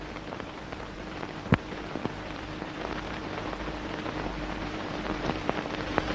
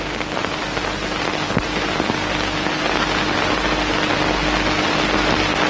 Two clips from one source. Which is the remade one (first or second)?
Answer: first